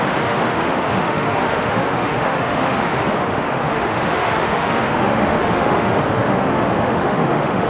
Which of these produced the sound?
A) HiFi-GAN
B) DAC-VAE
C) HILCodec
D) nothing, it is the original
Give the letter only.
B